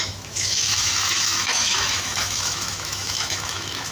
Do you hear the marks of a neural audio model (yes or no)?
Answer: yes